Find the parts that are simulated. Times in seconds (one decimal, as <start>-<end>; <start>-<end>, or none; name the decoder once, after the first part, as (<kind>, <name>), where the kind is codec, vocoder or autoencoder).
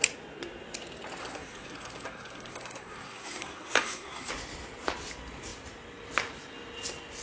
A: 1.2-4.3 (codec, SNAC)